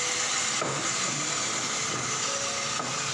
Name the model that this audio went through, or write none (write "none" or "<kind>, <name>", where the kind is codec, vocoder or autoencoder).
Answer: none